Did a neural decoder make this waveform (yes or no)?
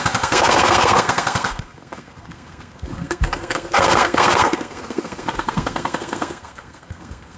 yes